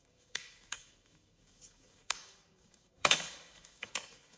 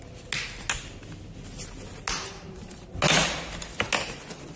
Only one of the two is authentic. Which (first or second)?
second